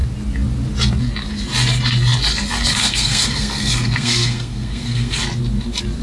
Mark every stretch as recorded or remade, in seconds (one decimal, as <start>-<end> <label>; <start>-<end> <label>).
0.0-2.8 recorded; 2.8-5.2 remade; 5.2-6.0 recorded